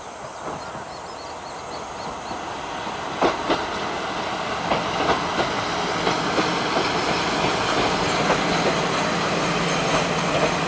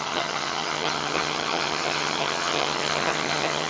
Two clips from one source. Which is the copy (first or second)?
second